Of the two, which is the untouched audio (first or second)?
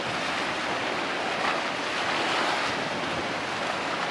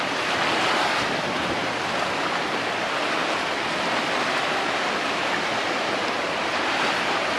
first